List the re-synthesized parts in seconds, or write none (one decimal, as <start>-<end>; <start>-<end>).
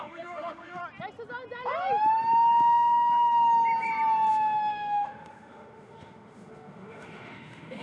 0.0-0.8; 4.3-7.8